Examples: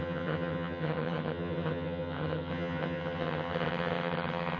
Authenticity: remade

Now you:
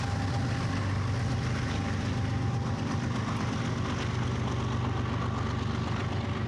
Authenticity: recorded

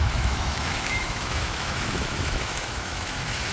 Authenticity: remade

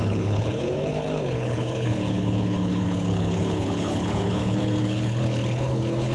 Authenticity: remade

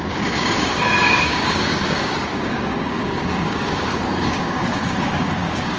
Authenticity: remade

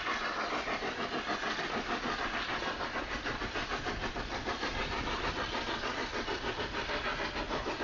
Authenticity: recorded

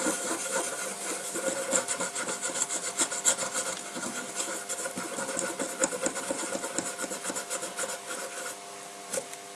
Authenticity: recorded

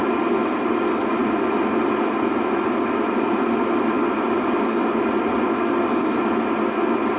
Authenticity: recorded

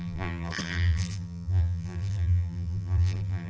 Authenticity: remade